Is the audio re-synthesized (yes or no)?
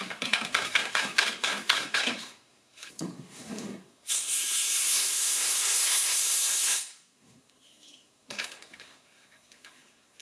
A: yes